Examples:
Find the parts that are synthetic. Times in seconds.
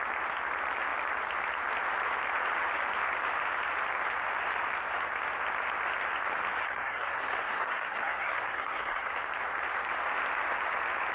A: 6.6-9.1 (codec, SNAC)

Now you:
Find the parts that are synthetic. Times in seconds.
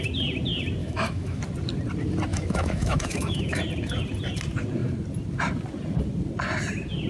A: 0.8-1.4 (autoencoder, DAC-VAE); 2.3-3.6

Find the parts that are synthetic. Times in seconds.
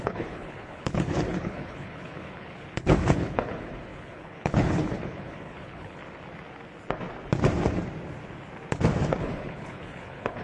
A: 0.0-6.0 (codec, HILCodec); 9.2-10.4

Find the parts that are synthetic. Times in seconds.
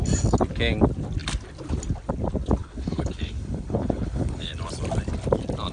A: 2.6-4.5 (codec, HILCodec)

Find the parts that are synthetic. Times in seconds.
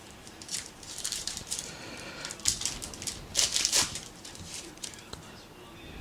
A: 0.0-2.1 (vocoder, BigVGAN v2); 3.5-5.1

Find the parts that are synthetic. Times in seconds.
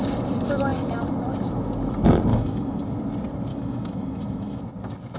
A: 2.3-2.8 (autoencoder, DAC-VAE); 3.5-4.6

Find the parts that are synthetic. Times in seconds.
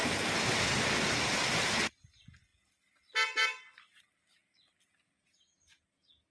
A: none